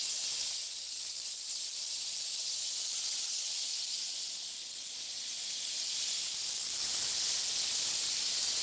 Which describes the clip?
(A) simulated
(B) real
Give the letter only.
B